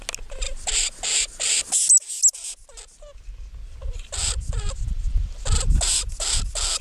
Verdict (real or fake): real